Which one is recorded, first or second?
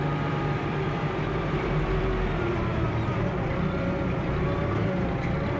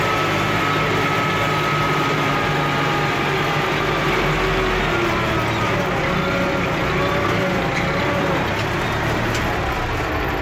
second